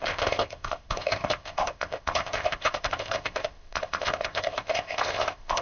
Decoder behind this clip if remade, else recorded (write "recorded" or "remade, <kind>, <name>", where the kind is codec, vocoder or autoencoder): remade, codec, ZipCodec